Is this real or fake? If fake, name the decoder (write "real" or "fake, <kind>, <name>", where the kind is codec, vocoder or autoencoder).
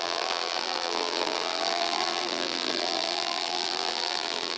fake, vocoder, BigVGAN v2